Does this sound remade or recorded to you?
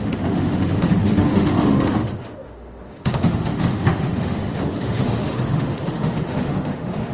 remade